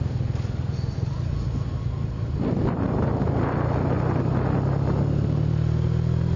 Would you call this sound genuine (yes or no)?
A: yes